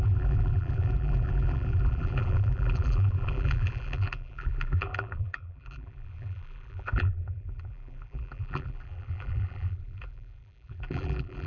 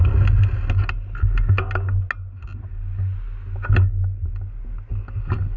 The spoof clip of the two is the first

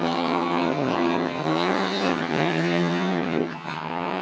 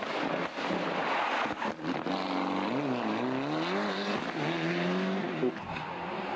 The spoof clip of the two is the first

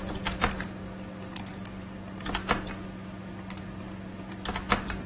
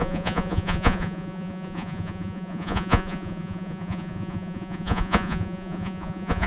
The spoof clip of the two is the second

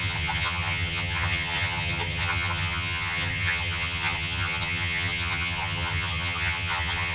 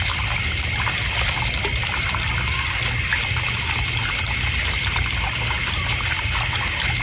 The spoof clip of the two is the first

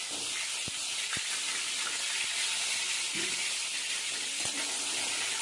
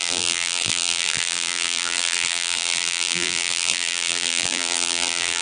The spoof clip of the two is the second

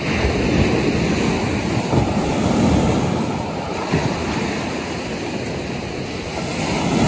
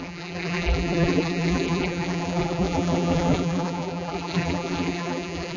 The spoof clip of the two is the second